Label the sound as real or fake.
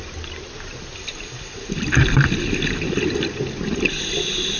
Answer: real